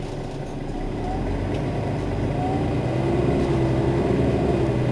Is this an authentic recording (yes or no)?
yes